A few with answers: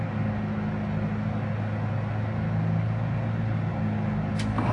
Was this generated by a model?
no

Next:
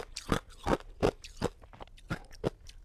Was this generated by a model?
no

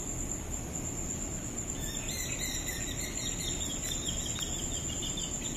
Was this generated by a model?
no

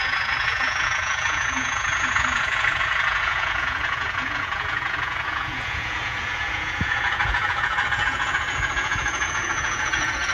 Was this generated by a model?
yes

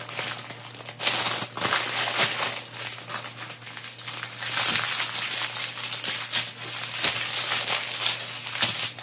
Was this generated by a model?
no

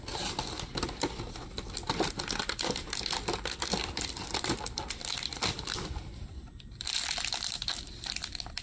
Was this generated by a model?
yes